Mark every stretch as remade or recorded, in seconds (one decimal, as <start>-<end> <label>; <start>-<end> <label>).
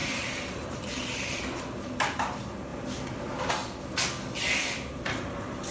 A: 0.0-1.4 remade; 1.4-5.7 recorded